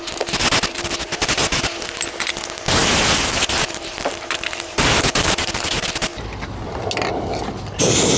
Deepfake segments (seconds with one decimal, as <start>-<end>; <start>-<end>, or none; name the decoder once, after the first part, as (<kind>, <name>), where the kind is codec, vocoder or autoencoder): 2.8-6.1 (vocoder, BigVGAN v2)